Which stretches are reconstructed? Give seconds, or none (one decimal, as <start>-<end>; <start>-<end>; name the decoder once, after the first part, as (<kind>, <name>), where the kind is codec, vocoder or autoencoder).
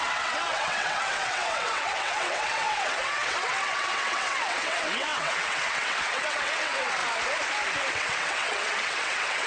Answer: 0.0-7.0 (vocoder, WaveNeXt); 7.9-9.5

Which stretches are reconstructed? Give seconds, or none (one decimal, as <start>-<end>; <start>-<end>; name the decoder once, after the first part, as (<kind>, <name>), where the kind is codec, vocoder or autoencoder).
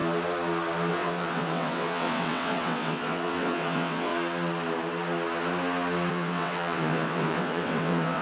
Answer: 0.9-4.1 (vocoder, WaveNeXt); 6.1-8.2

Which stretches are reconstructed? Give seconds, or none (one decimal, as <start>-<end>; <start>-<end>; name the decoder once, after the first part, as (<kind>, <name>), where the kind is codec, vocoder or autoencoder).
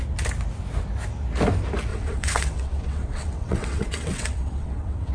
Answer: 1.9-5.1 (vocoder, WaveNeXt)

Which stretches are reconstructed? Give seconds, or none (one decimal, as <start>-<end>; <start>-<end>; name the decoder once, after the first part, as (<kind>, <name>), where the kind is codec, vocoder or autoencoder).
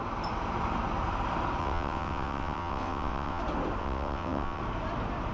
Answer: 1.6-3.4 (vocoder, WaveNeXt); 3.8-4.6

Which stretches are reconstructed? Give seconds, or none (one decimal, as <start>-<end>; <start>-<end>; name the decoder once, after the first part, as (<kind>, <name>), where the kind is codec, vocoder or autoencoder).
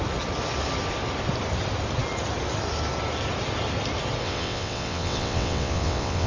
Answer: 4.2-6.3 (vocoder, WaveNeXt)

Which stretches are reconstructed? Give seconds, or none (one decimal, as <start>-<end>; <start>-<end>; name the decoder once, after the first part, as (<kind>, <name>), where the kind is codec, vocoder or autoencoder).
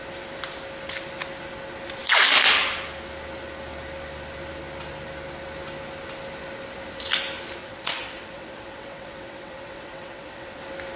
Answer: 7.6-10.6 (vocoder, WaveNeXt)